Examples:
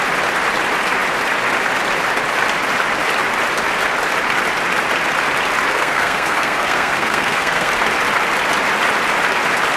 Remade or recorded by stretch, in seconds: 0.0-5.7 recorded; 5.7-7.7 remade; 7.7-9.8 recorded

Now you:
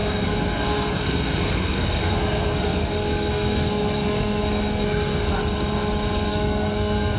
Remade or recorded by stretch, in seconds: 0.0-5.3 remade; 5.3-6.3 recorded; 6.3-7.2 remade

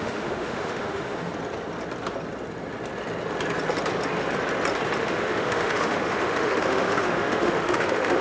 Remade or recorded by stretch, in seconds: 0.0-1.3 remade; 1.3-5.0 recorded; 5.0-8.2 remade

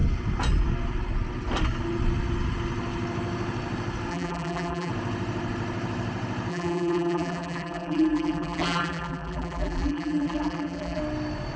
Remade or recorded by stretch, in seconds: 0.0-4.1 recorded; 4.1-4.9 remade; 4.9-6.5 recorded; 6.5-11.0 remade; 11.0-11.6 recorded

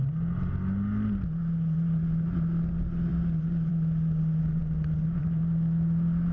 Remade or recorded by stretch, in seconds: 0.0-6.3 recorded

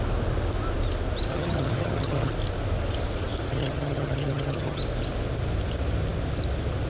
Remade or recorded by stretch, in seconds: 0.0-1.3 recorded; 1.3-2.3 remade; 2.3-3.5 recorded; 3.5-4.8 remade; 4.8-6.9 recorded

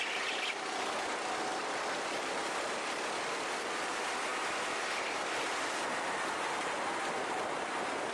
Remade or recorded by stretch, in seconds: 0.0-1.5 recorded; 1.5-3.8 remade; 3.8-8.1 recorded